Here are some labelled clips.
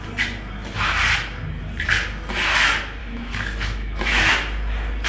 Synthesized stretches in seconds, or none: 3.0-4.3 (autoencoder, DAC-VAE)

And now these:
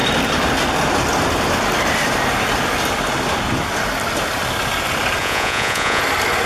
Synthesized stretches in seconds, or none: 5.2-6.0 (vocoder, Vocos)